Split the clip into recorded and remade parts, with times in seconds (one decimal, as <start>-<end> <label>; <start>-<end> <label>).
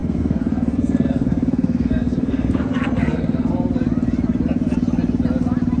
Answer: 0.0-3.5 remade; 3.5-5.8 recorded